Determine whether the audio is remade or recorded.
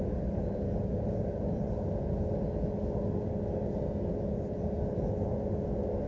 recorded